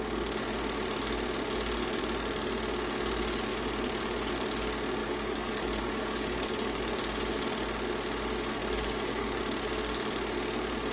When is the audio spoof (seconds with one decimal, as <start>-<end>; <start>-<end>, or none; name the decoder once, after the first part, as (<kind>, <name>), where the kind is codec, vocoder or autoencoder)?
5.0-6.8 (codec, DAC); 8.6-9.4